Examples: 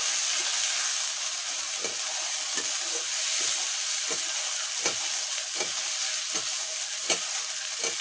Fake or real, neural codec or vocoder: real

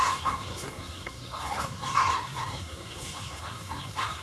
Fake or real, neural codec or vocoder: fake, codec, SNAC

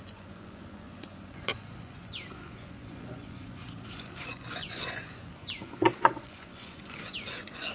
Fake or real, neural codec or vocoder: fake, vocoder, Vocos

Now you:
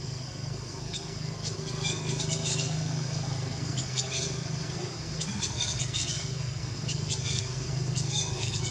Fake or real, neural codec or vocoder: fake, codec, SNAC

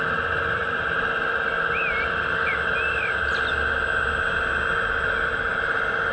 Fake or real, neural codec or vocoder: real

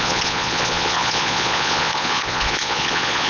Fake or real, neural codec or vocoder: fake, vocoder, Vocos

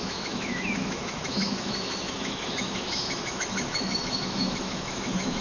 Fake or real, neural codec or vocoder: fake, autoencoder, DAC-VAE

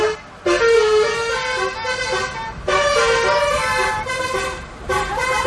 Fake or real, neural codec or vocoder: real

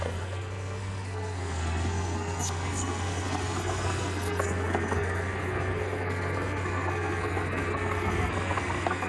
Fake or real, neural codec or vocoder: fake, codec, SNAC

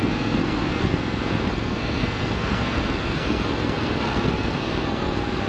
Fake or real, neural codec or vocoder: fake, codec, SNAC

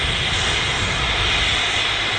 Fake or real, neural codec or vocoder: real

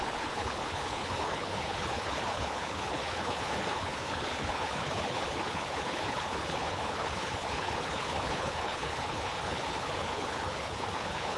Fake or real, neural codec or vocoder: fake, codec, HILCodec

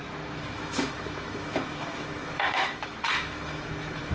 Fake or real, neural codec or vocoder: fake, autoencoder, DAC-VAE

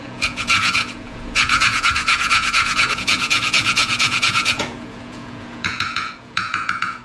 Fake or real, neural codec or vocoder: fake, vocoder, Vocos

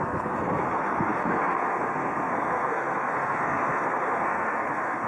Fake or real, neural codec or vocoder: fake, codec, SNAC